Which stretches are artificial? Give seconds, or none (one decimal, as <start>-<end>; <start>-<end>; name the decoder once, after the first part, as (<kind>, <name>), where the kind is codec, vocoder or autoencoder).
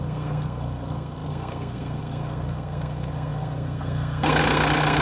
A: 0.0-5.0 (codec, SNAC)